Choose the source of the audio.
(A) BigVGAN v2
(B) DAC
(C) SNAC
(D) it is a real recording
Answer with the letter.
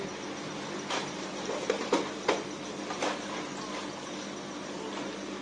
D